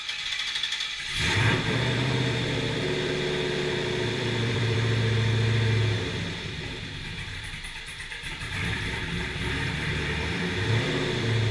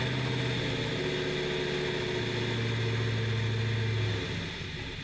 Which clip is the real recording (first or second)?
second